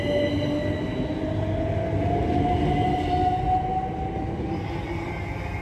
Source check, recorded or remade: recorded